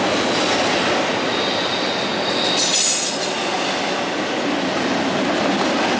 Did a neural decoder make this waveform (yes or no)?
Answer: no